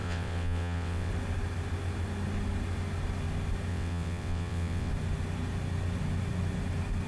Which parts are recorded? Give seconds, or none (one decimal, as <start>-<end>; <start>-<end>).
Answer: 1.1-3.7; 4.9-7.1